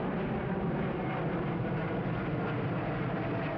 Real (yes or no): yes